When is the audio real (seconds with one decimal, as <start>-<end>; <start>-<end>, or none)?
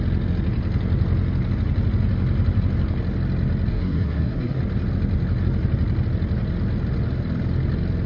0.0-3.7; 4.6-8.1